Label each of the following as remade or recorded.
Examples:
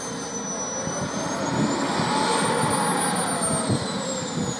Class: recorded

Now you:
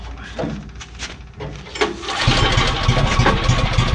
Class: recorded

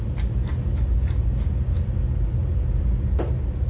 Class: recorded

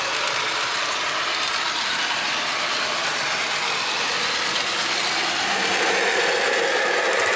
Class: recorded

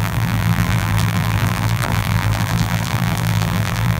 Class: remade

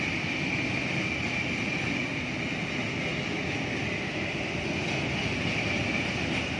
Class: recorded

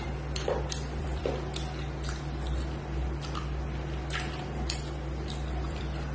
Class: remade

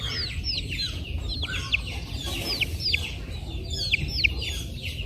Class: recorded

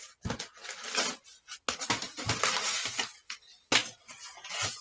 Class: recorded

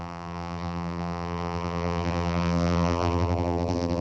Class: remade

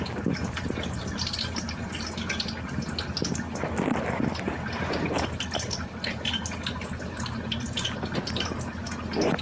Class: recorded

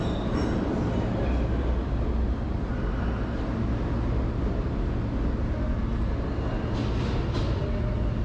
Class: recorded